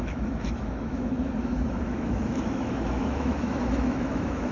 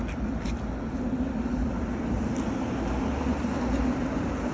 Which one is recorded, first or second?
second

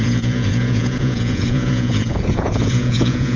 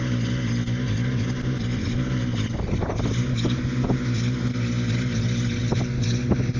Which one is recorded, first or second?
second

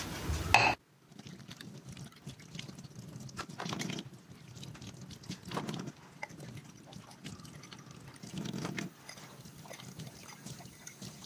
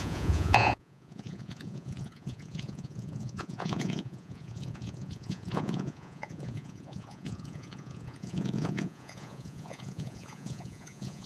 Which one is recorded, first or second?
first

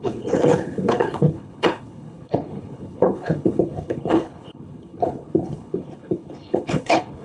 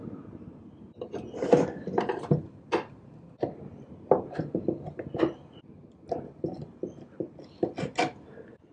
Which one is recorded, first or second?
second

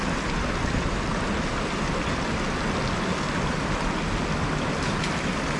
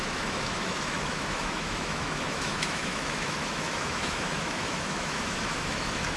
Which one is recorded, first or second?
first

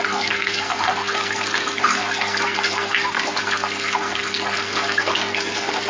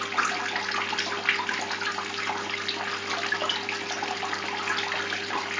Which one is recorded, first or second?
second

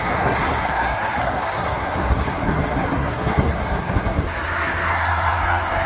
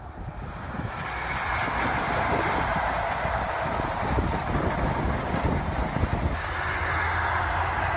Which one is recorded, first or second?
second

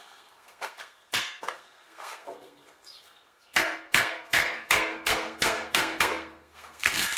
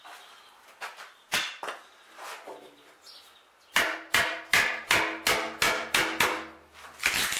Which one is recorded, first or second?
second